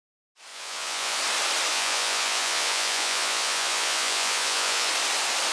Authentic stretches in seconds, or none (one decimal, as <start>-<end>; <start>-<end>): 0.0-0.5; 1.2-1.7; 4.9-5.5